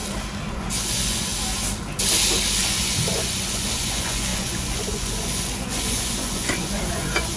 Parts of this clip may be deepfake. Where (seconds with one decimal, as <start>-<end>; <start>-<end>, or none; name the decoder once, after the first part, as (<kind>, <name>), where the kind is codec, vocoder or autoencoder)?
0.5-1.3 (vocoder, Vocos); 2.6-7.4